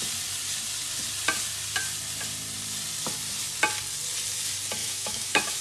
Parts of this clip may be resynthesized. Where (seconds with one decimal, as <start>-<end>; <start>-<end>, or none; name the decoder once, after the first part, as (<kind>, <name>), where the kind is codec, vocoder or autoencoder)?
4.8-5.6 (autoencoder, DAC-VAE)